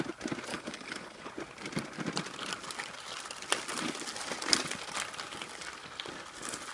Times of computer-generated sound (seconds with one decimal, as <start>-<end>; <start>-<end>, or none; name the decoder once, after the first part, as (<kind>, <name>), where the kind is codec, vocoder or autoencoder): 0.5-1.3 (codec, HILCodec)